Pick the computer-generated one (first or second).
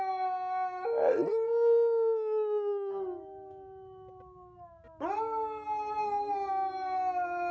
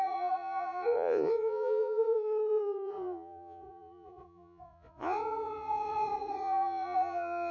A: second